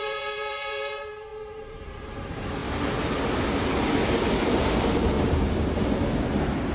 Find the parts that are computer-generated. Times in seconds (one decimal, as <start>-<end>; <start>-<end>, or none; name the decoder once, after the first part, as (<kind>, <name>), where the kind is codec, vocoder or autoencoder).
0.0-2.6 (vocoder, BigVGAN v2); 4.8-6.7